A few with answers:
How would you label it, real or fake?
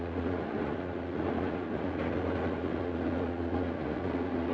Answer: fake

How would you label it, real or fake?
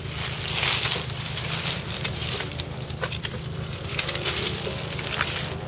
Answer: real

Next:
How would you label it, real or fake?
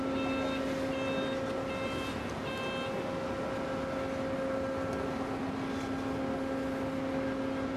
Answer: real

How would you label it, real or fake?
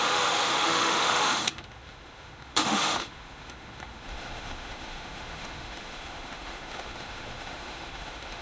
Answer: fake